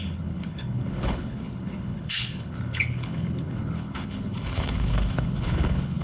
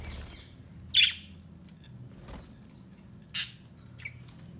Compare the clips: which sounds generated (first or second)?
first